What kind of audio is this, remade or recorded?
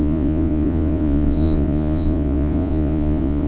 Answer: remade